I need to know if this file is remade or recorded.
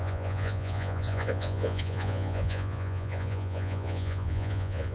remade